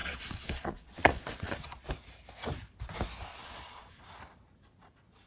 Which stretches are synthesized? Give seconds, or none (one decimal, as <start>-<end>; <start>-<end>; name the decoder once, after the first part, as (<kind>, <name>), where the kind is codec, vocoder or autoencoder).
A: 0.0-1.9 (vocoder, Vocos); 3.3-4.0